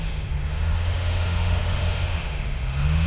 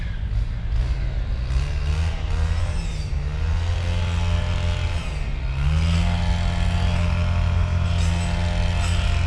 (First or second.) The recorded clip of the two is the second